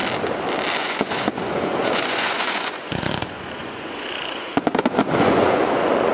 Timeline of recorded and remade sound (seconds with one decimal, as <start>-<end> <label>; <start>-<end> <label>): 0.0-0.8 recorded; 0.8-6.1 remade